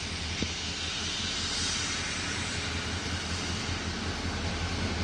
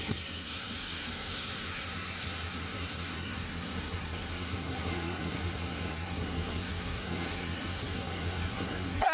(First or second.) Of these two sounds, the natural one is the first